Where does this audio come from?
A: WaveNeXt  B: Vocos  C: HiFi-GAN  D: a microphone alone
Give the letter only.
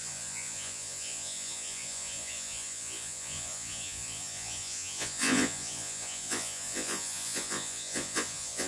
B